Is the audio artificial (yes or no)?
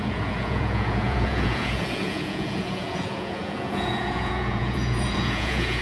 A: yes